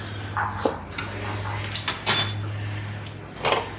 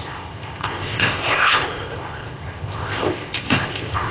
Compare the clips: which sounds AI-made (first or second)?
second